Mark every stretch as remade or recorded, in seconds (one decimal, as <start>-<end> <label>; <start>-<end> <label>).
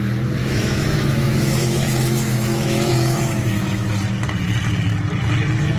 0.0-0.4 recorded; 0.4-3.9 remade; 3.9-5.8 recorded